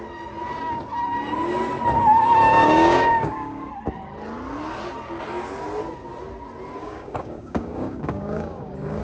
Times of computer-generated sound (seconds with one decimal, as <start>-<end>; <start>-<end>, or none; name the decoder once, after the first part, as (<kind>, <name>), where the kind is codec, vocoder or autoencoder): 2.5-3.7 (codec, DAC); 6.8-9.0